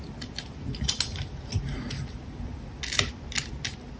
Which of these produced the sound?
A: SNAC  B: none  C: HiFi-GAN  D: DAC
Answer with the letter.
B